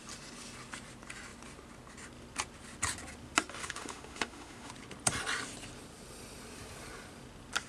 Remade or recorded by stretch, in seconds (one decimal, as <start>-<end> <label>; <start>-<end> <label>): 0.0-3.6 recorded; 3.6-4.7 remade; 4.7-7.7 recorded